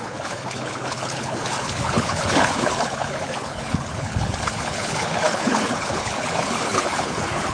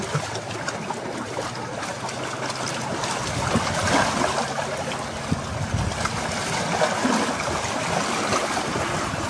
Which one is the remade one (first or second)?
first